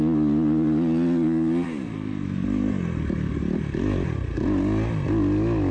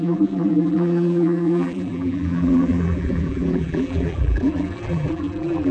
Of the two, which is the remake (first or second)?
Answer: second